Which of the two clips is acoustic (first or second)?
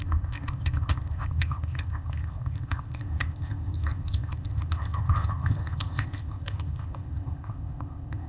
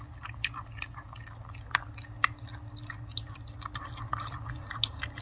second